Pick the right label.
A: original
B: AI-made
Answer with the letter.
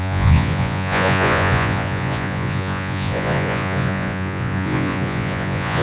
B